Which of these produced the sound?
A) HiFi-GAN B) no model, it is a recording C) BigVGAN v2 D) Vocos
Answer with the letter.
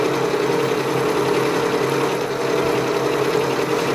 B